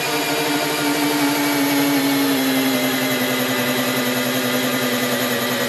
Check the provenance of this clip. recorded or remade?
recorded